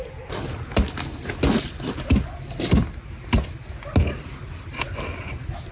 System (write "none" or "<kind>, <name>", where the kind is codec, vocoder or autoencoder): none